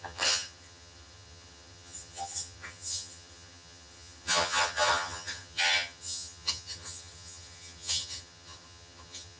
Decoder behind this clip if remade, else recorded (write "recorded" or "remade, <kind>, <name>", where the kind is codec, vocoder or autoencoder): remade, vocoder, HiFi-GAN